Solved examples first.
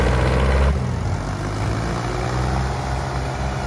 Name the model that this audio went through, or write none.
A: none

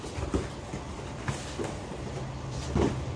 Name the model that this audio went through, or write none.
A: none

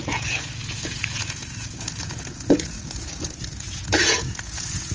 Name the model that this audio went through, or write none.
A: vocoder, Vocos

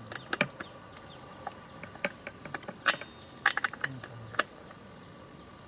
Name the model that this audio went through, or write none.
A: none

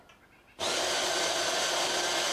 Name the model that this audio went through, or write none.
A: none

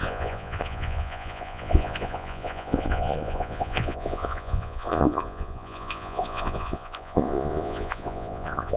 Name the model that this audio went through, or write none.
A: vocoder, Vocos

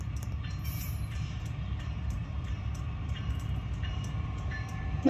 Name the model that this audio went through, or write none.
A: vocoder, BigVGAN v2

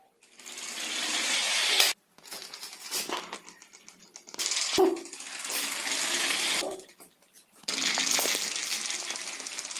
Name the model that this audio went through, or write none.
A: none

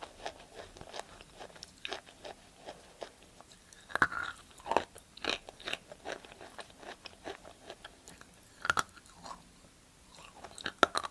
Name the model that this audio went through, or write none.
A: none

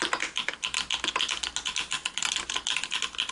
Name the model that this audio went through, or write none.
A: none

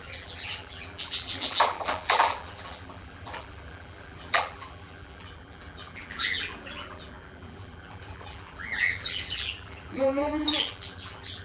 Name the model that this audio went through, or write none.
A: vocoder, BigVGAN v2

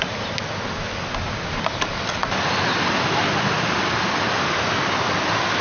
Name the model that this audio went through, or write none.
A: none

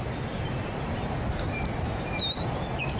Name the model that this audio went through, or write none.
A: none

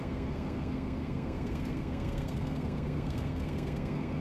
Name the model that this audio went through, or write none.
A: codec, SNAC